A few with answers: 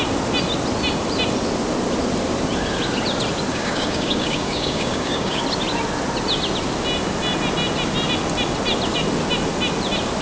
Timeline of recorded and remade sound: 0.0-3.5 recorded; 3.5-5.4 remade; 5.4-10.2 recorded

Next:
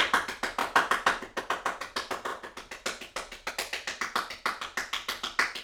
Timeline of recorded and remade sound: 0.0-5.6 recorded